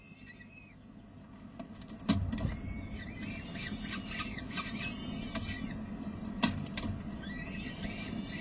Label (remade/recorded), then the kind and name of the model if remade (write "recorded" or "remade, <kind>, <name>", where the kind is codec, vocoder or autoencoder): recorded